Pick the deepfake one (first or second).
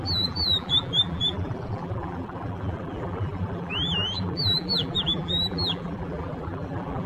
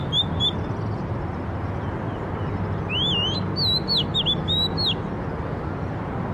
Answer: first